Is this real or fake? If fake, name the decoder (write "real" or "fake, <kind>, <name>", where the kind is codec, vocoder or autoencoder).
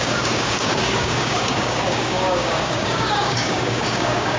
fake, codec, DAC